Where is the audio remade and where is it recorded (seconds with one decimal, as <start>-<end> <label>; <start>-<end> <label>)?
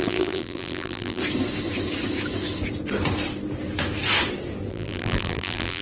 0.0-1.2 remade; 1.2-4.7 recorded; 4.7-5.8 remade